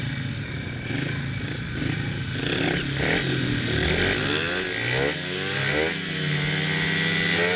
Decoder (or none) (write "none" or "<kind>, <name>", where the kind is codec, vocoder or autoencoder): none